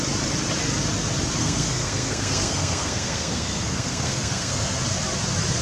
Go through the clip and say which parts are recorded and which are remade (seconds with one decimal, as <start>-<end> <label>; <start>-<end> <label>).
0.0-1.4 recorded; 1.4-4.8 remade; 4.8-5.6 recorded